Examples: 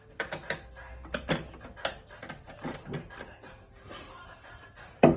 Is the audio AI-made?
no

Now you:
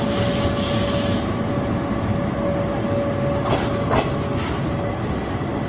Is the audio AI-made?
no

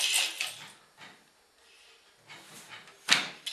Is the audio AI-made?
no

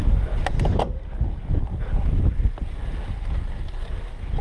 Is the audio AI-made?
no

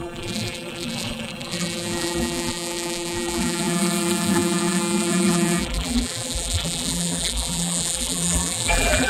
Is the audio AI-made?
yes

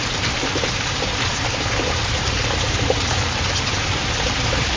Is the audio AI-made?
yes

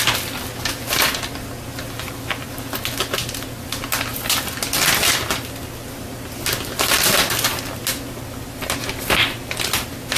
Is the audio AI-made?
no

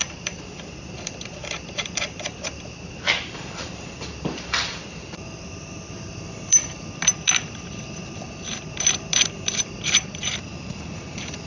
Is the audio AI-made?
yes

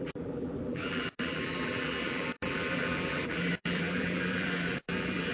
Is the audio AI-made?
yes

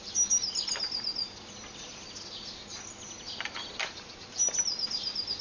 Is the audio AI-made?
no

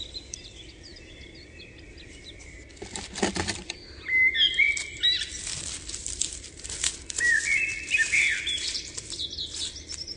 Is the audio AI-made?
yes